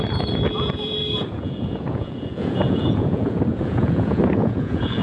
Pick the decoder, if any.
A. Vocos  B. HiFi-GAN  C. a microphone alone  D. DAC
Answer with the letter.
A